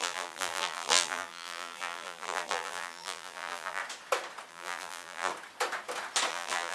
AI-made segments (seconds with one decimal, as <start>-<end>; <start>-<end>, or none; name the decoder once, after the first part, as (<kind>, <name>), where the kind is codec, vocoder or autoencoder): 0.0-3.8 (vocoder, BigVGAN v2); 4.5-5.3; 6.3-6.7

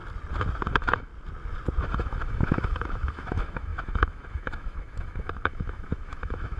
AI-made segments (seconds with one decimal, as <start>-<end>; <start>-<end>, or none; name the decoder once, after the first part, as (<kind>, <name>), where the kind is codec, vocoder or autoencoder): 0.7-1.1 (autoencoder, DAC-VAE); 1.8-6.6

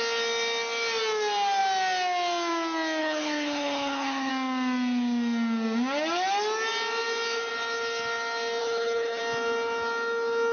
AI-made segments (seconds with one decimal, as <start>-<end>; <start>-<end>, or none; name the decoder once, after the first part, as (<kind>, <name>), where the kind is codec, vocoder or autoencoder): 3.0-4.3 (codec, HILCodec); 8.6-9.2

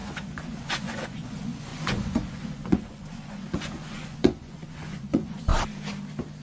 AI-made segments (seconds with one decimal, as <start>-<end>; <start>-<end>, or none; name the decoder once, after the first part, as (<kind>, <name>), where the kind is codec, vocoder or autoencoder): 0.0-5.5 (vocoder, Vocos)

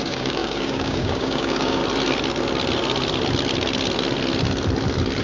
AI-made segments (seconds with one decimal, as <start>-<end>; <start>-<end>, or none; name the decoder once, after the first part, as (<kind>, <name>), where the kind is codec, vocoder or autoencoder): 0.0-1.8 (codec, DAC)

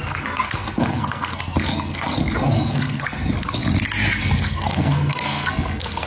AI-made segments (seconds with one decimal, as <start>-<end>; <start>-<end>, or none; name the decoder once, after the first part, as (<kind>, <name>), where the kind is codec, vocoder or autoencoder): 0.0-3.6 (codec, SNAC); 4.2-6.1

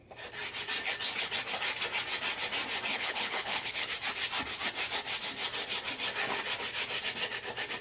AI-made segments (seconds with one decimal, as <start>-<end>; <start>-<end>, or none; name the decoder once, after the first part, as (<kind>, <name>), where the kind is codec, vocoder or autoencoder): 2.9-3.9 (codec, HILCodec)